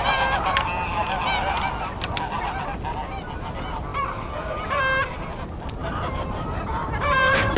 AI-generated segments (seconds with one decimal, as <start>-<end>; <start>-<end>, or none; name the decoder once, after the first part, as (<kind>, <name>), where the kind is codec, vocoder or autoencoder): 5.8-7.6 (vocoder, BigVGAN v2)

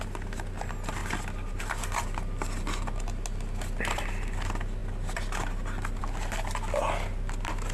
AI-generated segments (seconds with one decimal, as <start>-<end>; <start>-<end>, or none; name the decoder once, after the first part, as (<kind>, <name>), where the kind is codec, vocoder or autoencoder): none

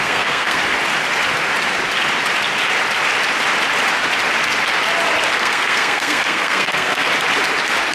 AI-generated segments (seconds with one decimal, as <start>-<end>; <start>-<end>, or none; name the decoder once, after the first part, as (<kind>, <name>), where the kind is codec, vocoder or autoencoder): 0.0-0.6 (codec, SNAC); 5.3-7.1

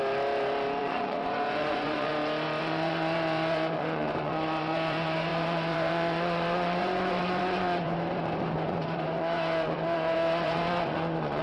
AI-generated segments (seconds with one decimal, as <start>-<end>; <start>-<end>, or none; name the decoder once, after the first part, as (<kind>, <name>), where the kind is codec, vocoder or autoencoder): 0.8-2.1 (vocoder, Vocos); 2.6-11.4